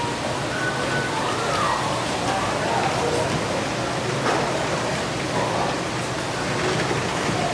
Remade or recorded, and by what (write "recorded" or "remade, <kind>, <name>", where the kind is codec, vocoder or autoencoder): recorded